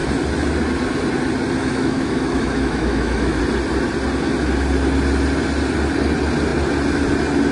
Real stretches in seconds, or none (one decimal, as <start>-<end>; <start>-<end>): 0.0-1.6; 3.4-7.5